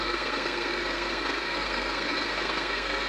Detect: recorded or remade remade